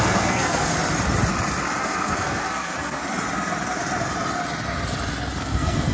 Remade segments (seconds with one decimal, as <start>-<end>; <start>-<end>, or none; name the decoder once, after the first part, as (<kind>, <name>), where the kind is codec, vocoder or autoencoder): 0.0-0.7 (codec, SNAC); 1.8-3.0; 5.4-5.9